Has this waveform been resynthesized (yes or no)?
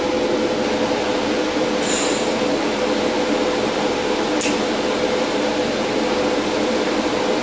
no